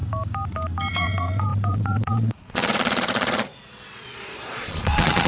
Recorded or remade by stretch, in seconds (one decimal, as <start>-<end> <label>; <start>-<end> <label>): 0.0-0.9 recorded; 0.9-5.3 remade